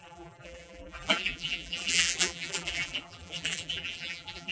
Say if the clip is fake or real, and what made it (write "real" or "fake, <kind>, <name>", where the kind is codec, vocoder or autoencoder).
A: fake, vocoder, BigVGAN v2